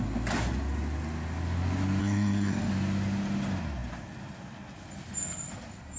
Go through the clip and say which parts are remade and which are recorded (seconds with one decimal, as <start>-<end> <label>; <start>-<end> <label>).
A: 0.0-2.0 recorded; 2.0-2.7 remade; 2.7-6.0 recorded